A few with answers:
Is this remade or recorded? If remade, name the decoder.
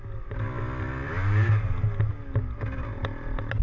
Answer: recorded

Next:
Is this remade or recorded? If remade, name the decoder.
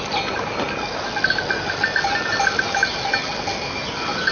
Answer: recorded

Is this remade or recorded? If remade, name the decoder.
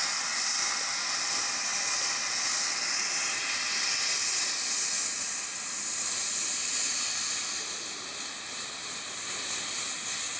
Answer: recorded